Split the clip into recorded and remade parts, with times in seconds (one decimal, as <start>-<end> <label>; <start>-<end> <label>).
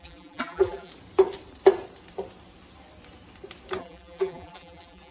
0.0-0.9 remade; 0.9-3.8 recorded; 3.8-5.1 remade